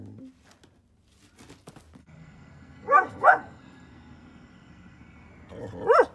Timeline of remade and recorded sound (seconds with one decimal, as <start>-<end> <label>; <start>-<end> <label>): 0.0-2.0 recorded; 2.0-5.3 remade; 5.3-6.1 recorded